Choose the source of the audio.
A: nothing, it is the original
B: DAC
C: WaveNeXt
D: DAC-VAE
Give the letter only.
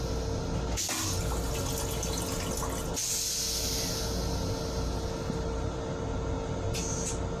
A